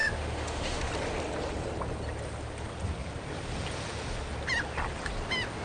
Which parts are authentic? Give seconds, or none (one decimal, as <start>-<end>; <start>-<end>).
0.9-5.6